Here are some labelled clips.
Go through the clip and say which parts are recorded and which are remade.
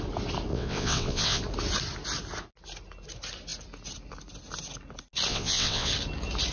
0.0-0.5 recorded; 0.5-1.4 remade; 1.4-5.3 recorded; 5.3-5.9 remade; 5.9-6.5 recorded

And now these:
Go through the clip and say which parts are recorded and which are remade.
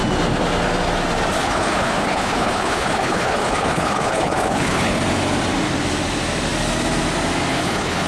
0.0-1.4 recorded; 1.4-5.0 remade; 5.0-7.5 recorded; 7.5-8.1 remade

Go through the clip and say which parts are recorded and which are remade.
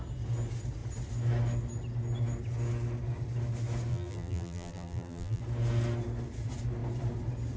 0.0-3.9 recorded; 3.9-5.4 remade; 5.4-7.6 recorded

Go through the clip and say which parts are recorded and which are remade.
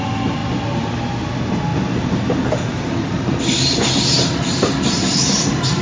0.0-5.8 recorded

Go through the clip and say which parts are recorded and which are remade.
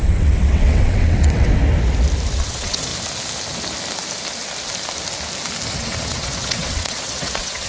0.0-1.6 remade; 1.6-2.4 recorded; 2.4-2.9 remade; 2.9-5.7 recorded; 5.7-7.7 remade